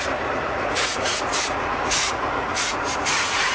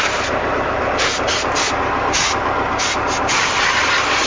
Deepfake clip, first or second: first